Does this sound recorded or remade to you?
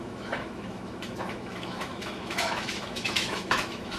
remade